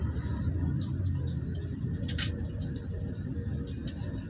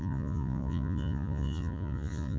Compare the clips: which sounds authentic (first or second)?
first